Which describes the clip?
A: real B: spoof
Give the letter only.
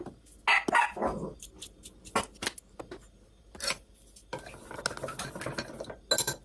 A